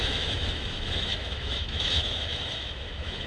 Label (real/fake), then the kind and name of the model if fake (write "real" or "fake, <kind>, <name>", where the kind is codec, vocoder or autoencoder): fake, autoencoder, DAC-VAE